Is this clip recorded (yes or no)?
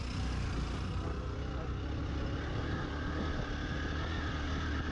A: yes